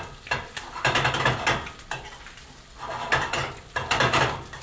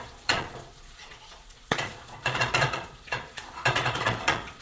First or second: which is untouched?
first